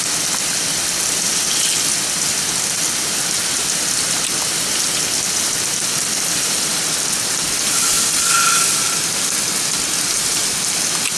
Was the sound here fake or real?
real